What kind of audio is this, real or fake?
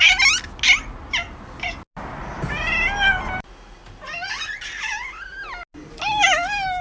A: real